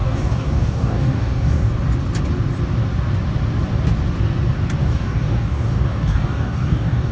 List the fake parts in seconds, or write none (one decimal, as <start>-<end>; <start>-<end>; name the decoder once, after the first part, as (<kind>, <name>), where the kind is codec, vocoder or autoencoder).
0.0-1.7 (codec, DAC); 4.8-7.1